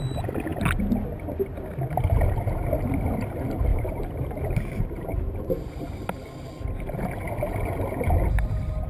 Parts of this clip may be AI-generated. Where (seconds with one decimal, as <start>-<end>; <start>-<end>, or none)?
3.7-6.2